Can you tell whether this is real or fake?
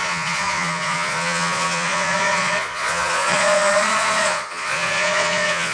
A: fake